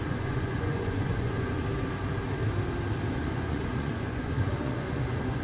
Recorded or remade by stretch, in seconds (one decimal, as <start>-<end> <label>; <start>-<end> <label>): 0.0-1.6 remade; 1.6-3.1 recorded; 3.1-5.4 remade